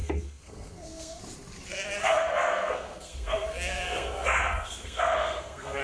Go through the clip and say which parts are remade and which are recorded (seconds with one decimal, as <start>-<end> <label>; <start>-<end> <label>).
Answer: 0.0-1.2 remade; 1.2-2.0 recorded; 2.0-5.8 remade